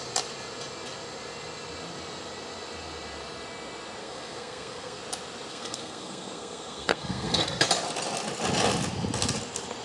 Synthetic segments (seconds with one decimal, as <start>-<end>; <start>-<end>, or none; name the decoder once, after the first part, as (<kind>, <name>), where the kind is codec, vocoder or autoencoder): 4.0-5.0 (codec, SNAC); 5.5-7.4

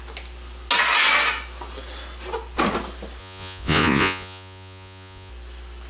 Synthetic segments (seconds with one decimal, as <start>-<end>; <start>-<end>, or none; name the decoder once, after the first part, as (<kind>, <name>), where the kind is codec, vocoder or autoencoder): 3.2-5.3 (vocoder, Vocos)

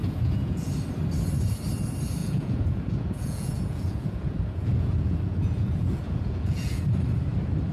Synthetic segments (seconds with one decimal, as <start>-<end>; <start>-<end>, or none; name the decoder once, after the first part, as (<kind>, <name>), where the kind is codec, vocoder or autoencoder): 0.0-0.7 (vocoder, Vocos); 2.2-6.8

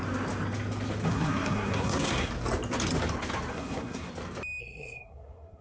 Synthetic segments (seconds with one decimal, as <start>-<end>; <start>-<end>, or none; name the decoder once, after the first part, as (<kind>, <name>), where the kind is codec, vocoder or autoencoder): 1.1-2.3 (codec, SNAC); 3.5-4.1; 4.6-5.6

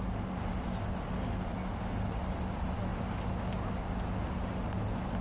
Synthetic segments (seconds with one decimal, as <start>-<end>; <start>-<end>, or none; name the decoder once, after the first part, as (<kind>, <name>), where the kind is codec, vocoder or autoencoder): none

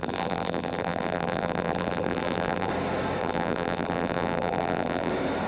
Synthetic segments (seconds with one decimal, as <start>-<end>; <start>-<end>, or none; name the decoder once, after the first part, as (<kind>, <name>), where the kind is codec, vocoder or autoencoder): 0.0-2.7 (vocoder, BigVGAN v2); 3.2-5.1

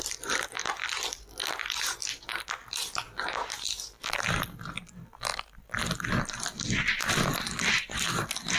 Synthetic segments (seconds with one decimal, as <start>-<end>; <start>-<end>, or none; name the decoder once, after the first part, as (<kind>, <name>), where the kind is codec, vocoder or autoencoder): 2.3-3.2 (vocoder, BigVGAN v2)

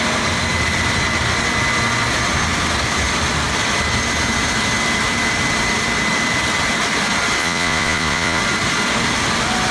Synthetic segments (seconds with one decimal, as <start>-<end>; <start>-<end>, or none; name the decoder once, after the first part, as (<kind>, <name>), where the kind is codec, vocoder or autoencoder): 7.4-8.4 (vocoder, Vocos)